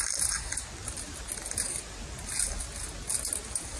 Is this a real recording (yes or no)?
yes